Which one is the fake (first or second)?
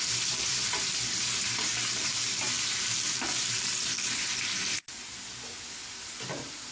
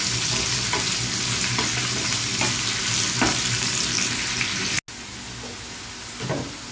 first